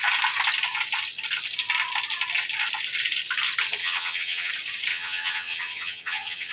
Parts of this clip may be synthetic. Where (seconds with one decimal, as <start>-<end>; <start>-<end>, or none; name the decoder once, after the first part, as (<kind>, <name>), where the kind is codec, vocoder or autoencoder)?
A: 3.8-4.5 (vocoder, HiFi-GAN); 4.9-6.5